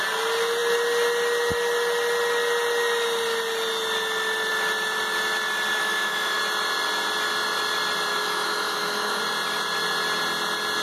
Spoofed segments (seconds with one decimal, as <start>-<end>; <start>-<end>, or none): 5.8-6.4; 8.1-9.2